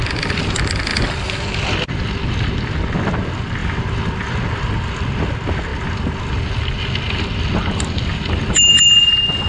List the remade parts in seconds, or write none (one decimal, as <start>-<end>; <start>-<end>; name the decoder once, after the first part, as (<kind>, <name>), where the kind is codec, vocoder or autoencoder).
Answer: none